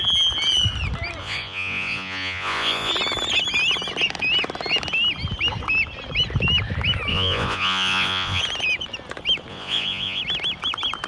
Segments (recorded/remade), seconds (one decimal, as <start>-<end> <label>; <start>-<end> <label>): 0.0-1.2 recorded; 1.2-2.9 remade; 2.9-7.1 recorded; 7.1-8.4 remade; 8.4-9.5 recorded; 9.5-10.2 remade; 10.2-11.1 recorded